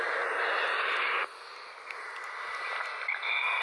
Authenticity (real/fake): real